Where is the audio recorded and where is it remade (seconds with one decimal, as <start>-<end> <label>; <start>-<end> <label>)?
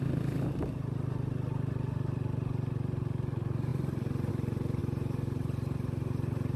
0.0-6.6 recorded